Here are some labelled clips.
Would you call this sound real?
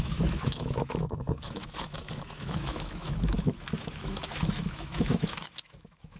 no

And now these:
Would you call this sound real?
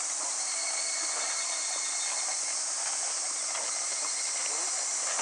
yes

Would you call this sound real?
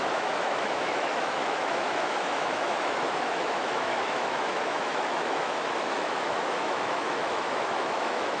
no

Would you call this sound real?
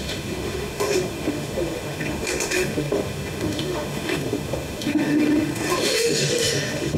no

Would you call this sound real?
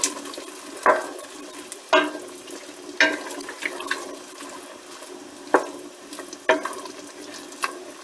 yes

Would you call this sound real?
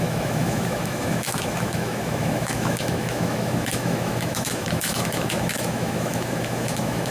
no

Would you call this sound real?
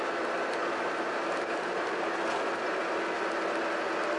yes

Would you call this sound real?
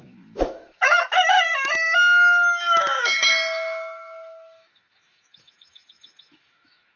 no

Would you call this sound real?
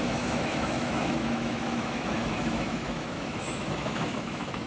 no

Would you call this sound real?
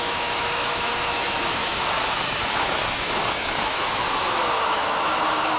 no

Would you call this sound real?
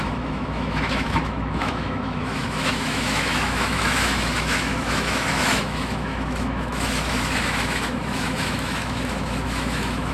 no